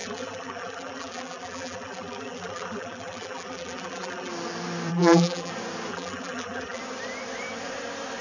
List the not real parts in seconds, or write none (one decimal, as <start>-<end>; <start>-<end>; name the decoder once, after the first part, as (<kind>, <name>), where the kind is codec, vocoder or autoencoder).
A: 0.0-4.3 (vocoder, BigVGAN v2); 4.9-5.5; 5.9-6.8

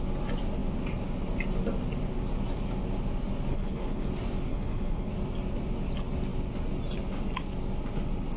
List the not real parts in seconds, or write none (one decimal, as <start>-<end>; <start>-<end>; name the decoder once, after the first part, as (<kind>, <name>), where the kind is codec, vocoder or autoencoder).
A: 3.5-4.1 (codec, HILCodec); 4.5-5.1

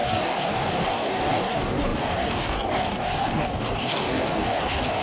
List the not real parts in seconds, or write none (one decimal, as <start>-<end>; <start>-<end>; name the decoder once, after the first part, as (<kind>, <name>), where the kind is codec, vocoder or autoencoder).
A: 0.0-5.0 (codec, DAC)